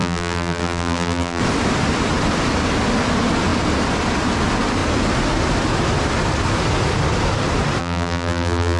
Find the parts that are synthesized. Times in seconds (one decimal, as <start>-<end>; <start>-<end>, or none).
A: 0.0-1.4; 7.8-8.8